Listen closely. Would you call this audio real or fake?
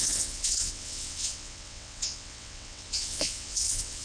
fake